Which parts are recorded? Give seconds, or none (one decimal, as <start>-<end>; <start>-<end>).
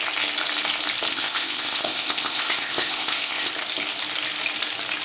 0.0-1.1; 3.5-5.0